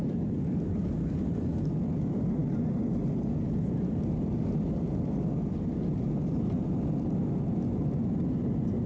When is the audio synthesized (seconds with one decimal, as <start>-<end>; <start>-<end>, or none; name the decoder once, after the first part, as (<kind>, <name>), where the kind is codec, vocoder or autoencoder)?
none